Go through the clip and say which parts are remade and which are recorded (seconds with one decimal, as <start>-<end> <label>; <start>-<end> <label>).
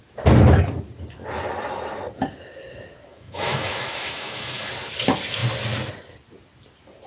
0.0-3.1 recorded; 3.1-4.7 remade; 4.7-7.1 recorded